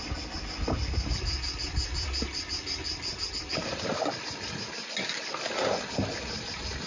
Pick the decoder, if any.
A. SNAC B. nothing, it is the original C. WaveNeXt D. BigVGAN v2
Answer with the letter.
B